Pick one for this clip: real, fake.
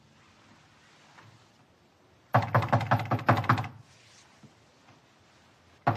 real